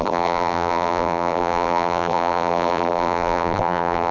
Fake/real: fake